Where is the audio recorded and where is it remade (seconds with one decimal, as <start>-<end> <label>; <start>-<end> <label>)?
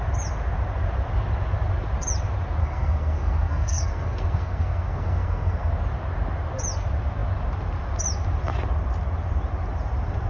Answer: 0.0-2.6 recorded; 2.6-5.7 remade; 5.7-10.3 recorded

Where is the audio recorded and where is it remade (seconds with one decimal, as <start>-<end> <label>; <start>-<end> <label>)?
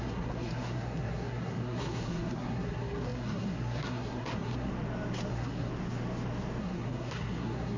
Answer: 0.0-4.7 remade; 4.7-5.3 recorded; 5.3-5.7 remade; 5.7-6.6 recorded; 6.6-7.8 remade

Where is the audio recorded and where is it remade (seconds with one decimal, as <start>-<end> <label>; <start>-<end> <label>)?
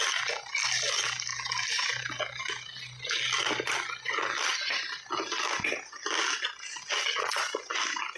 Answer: 0.0-8.2 recorded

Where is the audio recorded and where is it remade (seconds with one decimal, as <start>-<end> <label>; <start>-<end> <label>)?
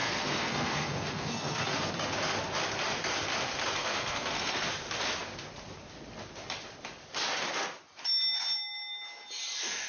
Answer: 0.0-1.9 remade; 1.9-3.8 recorded; 3.8-4.7 remade; 4.7-9.9 recorded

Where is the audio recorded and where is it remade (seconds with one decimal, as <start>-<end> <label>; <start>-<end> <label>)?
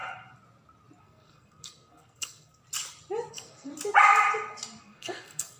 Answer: 0.0-1.0 recorded; 1.0-2.6 remade; 2.6-3.3 recorded; 3.3-3.7 remade; 3.7-4.8 recorded; 4.8-5.6 remade